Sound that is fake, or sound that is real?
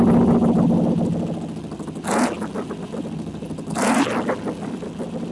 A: real